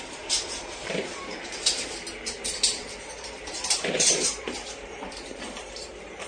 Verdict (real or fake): fake